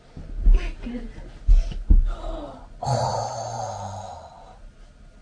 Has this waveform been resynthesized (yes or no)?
no